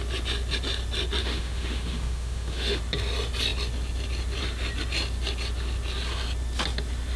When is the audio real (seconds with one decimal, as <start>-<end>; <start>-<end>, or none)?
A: 0.0-1.2; 2.8-7.2